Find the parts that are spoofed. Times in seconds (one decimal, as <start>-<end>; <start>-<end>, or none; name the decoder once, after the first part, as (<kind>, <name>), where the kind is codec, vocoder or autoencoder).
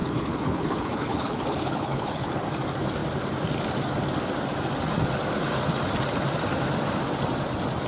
0.0-2.5 (codec, HILCodec)